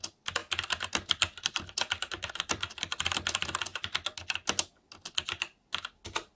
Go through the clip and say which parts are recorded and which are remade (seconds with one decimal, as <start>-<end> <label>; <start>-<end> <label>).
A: 0.0-3.7 remade; 3.7-6.0 recorded; 6.0-6.4 remade